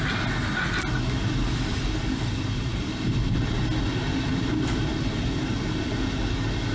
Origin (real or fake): real